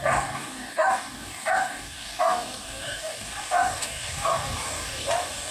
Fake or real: fake